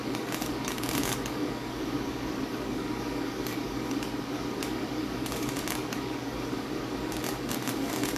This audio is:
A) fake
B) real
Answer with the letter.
A